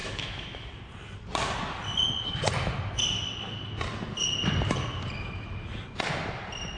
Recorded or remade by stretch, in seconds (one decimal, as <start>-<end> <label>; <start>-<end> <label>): 0.0-0.7 remade; 0.7-6.8 recorded